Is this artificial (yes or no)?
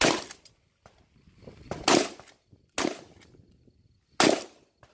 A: no